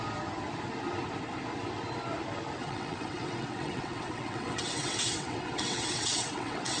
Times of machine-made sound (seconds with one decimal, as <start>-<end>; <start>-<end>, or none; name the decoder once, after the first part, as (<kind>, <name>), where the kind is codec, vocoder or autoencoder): 2.6-6.8 (vocoder, WaveNeXt)